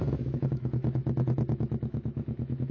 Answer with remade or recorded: remade